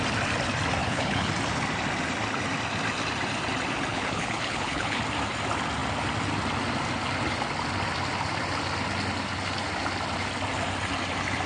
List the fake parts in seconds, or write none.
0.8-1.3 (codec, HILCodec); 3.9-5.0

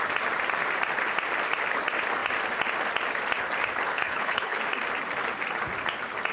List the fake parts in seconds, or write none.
3.9-4.6 (codec, HILCodec)